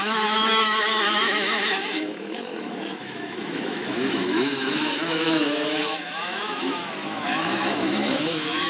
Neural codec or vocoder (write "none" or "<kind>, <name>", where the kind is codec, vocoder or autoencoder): autoencoder, DAC-VAE